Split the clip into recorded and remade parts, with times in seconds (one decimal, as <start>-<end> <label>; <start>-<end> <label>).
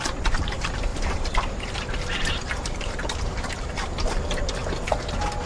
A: 0.0-4.6 remade; 4.6-5.5 recorded